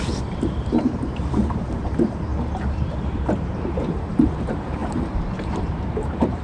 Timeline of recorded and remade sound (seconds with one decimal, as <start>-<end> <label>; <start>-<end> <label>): 0.0-6.4 remade